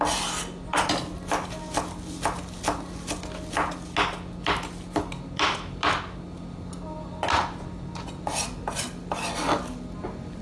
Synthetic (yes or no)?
no